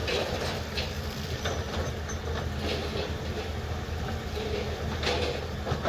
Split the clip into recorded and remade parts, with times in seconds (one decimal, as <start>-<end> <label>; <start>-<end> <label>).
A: 0.0-1.9 remade; 1.9-5.9 recorded